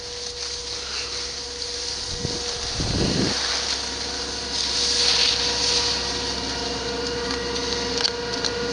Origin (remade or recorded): recorded